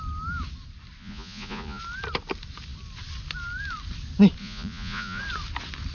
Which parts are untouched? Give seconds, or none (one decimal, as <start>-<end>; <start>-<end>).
0.0-1.0; 1.8-4.4; 5.2-5.9